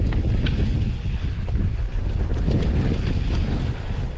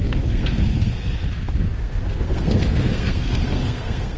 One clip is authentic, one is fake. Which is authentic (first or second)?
first